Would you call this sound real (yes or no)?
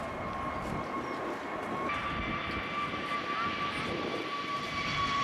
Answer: yes